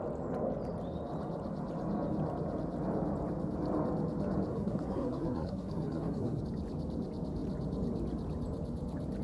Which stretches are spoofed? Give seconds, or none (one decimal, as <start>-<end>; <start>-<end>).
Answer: 4.5-6.4